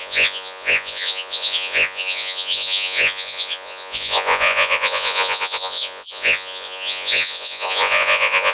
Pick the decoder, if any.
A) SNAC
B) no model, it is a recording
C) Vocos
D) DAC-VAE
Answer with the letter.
C